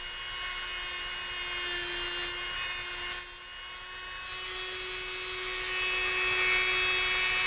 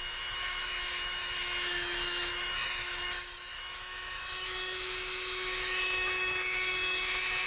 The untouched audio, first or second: first